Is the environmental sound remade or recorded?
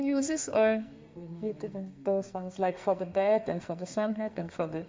remade